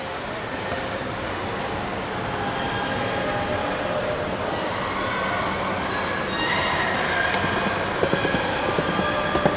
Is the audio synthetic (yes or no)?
no